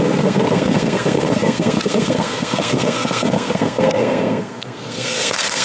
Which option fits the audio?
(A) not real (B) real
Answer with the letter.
A